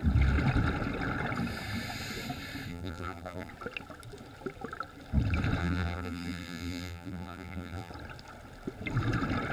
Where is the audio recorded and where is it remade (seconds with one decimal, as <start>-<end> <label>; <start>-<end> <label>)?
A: 0.0-2.7 recorded; 2.7-3.5 remade; 3.5-5.6 recorded; 5.6-7.9 remade; 7.9-9.5 recorded